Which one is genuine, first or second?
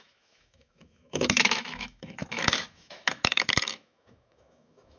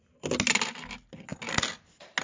second